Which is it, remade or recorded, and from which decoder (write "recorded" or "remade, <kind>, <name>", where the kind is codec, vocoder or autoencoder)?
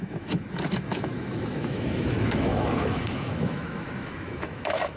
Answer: remade, autoencoder, DAC-VAE